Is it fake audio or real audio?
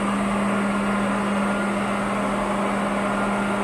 real